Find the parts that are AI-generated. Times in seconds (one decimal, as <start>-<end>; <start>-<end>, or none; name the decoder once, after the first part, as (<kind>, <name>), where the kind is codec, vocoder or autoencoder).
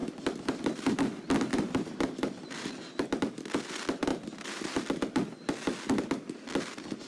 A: 0.0-1.0 (vocoder, BigVGAN v2); 1.5-2.7; 4.1-4.8